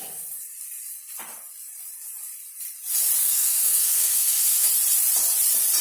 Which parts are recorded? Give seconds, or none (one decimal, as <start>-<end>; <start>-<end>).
0.0-3.2; 4.7-5.8